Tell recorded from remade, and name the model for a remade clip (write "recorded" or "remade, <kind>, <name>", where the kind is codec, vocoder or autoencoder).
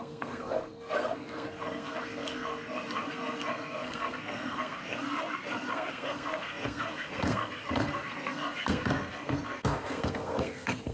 remade, codec, SNAC